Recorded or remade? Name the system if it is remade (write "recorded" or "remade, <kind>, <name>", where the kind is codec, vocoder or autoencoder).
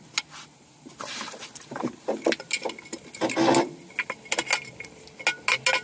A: recorded